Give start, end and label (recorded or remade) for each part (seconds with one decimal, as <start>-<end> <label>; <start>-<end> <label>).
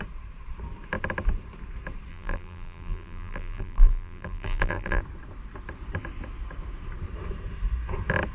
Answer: 0.0-2.1 recorded; 2.1-5.0 remade; 5.0-8.3 recorded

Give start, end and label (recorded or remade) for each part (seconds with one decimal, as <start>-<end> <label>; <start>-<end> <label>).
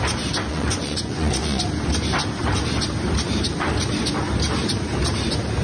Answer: 0.0-0.5 recorded; 0.5-1.6 remade; 1.6-5.6 recorded